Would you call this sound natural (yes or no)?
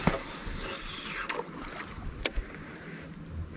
yes